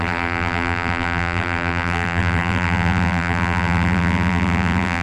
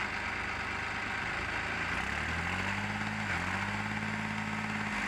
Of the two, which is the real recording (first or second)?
second